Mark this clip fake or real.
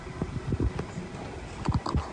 real